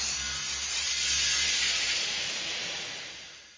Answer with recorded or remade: recorded